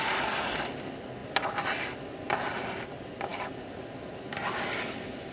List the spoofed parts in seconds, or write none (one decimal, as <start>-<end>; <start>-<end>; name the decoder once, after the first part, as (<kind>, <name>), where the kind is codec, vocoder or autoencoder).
3.3-4.4 (vocoder, BigVGAN v2)